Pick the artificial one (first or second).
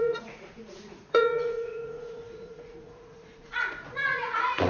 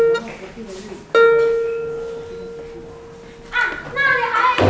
first